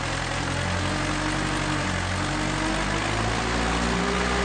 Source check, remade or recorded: recorded